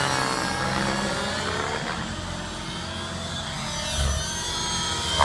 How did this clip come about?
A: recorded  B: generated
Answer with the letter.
A